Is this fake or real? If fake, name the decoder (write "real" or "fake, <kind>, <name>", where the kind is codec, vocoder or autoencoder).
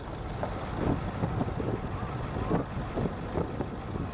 fake, vocoder, BigVGAN v2